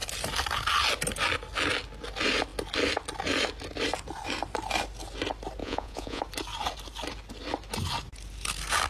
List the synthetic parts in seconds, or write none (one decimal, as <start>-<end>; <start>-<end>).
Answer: 5.6-6.2